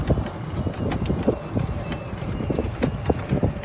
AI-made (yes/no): no